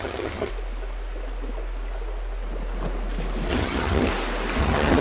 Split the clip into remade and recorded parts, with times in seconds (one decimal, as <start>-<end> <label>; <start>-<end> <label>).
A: 0.0-0.5 remade; 0.5-3.5 recorded; 3.5-4.1 remade; 4.1-4.6 recorded; 4.6-5.0 remade